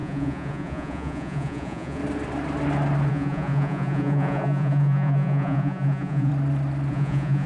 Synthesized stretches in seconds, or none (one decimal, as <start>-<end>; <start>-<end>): 0.0-2.0; 3.1-6.3; 6.9-7.5